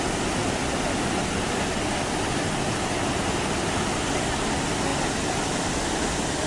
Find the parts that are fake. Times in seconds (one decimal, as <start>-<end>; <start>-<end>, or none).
0.4-1.0